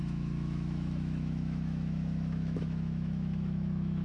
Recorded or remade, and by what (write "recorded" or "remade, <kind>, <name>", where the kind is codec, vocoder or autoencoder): remade, autoencoder, DAC-VAE